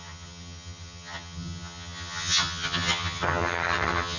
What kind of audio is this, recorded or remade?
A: remade